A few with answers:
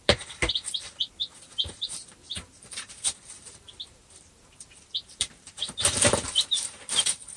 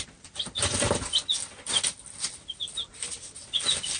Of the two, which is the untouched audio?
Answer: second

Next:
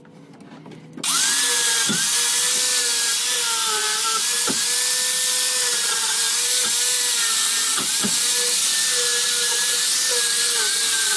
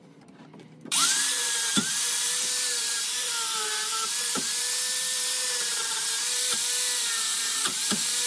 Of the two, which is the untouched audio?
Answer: first